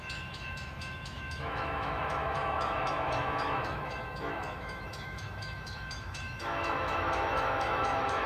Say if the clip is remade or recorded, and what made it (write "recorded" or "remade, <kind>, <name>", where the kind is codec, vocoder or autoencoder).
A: remade, autoencoder, DAC-VAE